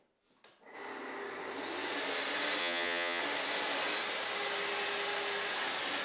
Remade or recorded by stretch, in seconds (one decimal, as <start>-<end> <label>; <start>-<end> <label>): 0.0-2.6 recorded; 2.6-3.2 remade; 3.2-6.0 recorded